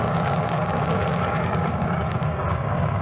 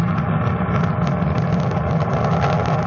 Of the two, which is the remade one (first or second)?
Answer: first